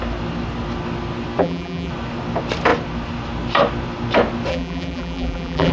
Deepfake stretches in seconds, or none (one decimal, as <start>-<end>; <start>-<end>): 1.4-1.9; 4.5-5.7